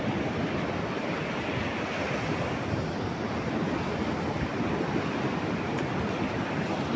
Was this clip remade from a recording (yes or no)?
no